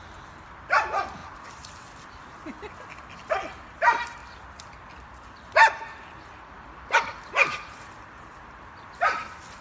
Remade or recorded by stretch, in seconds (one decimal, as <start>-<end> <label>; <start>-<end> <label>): 0.0-1.2 recorded; 1.2-2.2 remade; 2.2-4.2 recorded; 4.2-8.9 remade; 8.9-9.6 recorded